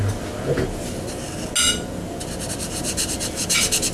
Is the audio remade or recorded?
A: recorded